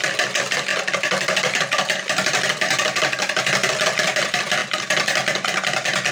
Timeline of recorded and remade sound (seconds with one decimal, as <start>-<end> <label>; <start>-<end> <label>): 0.0-6.1 recorded